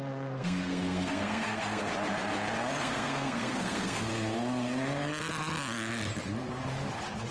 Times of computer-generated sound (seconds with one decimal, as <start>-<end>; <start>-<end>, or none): 0.0-1.9; 2.8-4.1